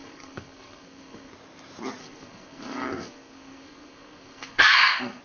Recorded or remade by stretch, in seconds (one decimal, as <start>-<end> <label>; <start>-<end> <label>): 0.0-1.3 remade; 1.3-2.0 recorded; 2.0-5.2 remade